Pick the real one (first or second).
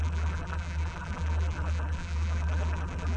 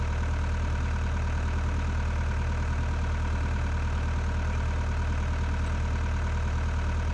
second